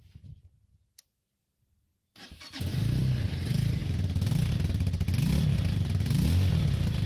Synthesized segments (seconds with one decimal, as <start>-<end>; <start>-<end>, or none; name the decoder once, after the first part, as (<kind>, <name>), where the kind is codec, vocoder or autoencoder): 0.0-1.4 (vocoder, BigVGAN v2); 2.7-3.8; 4.5-7.1